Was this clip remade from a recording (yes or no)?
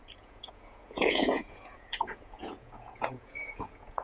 yes